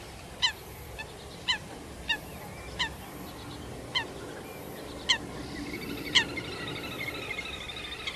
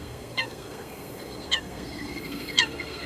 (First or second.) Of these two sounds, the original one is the first